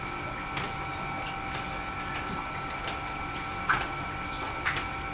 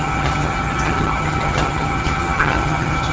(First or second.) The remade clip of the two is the second